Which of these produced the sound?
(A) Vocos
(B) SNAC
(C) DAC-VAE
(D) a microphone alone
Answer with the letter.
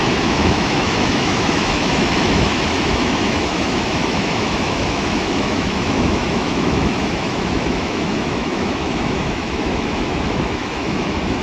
C